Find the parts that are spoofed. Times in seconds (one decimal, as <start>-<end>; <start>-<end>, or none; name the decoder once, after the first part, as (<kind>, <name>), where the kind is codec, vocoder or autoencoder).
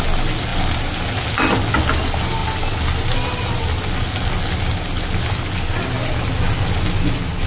none